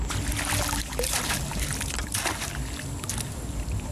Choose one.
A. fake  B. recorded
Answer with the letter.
B